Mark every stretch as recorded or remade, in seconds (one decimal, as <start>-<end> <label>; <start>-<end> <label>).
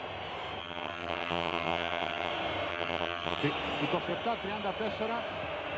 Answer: 0.0-0.6 recorded; 0.6-2.3 remade; 2.3-2.7 recorded; 2.7-3.4 remade; 3.4-5.8 recorded